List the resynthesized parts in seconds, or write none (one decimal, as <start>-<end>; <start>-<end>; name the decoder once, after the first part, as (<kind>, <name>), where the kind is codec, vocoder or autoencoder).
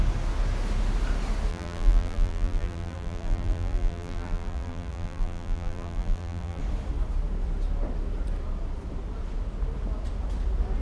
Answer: 1.5-6.6 (vocoder, BigVGAN v2)